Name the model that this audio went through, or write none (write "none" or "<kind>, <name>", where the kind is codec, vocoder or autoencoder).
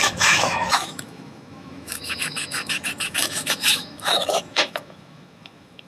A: autoencoder, DAC-VAE